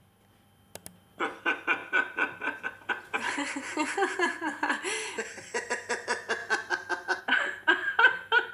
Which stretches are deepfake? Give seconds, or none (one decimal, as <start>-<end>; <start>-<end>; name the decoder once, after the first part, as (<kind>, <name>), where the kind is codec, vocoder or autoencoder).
1.8-2.6 (vocoder, BigVGAN v2); 3.7-4.7; 6.4-7.2